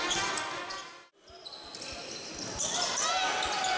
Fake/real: real